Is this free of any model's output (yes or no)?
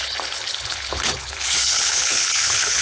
no